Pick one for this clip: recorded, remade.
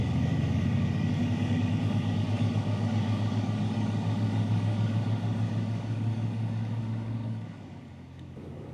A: remade